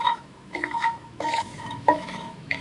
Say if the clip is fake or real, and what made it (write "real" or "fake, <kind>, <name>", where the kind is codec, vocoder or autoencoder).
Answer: fake, autoencoder, DAC-VAE